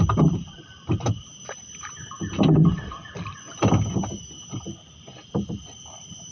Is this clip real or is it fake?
fake